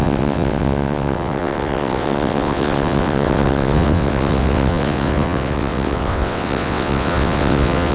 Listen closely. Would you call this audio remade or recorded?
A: remade